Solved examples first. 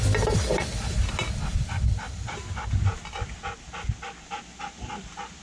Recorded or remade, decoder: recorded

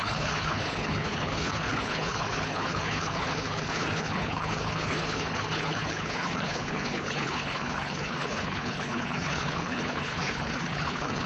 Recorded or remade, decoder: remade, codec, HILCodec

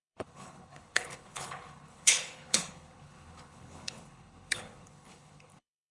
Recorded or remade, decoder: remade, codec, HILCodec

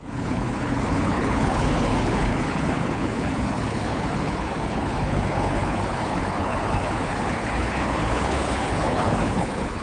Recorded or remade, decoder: remade, codec, HILCodec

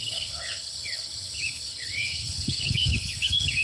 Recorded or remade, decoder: remade, codec, HILCodec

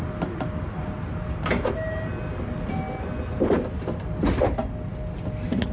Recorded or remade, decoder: recorded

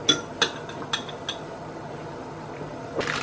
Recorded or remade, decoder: recorded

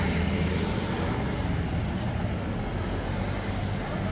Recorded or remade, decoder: recorded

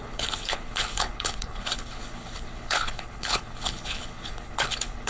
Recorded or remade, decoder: remade, codec, HILCodec